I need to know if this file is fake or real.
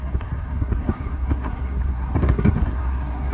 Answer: fake